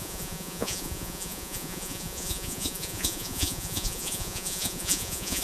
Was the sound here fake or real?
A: fake